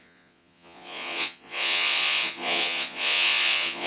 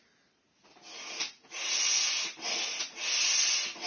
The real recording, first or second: second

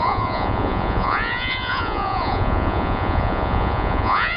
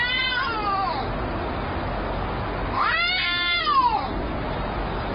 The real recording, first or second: second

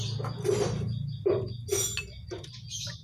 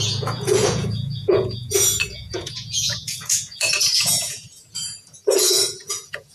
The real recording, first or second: first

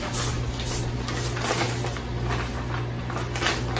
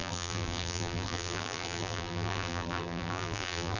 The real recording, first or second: first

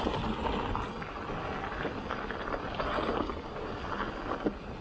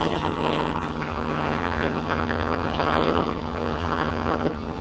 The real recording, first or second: first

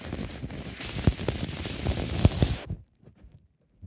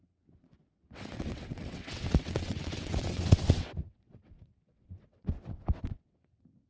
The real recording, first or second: first